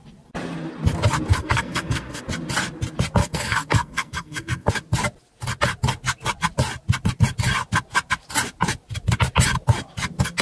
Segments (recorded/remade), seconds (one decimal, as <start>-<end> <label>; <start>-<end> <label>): 0.0-1.4 recorded; 1.4-2.2 remade; 2.2-3.2 recorded; 3.2-4.7 remade; 4.7-10.4 recorded